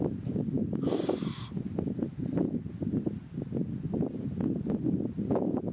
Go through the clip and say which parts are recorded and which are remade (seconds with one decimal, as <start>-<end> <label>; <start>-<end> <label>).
0.0-5.7 recorded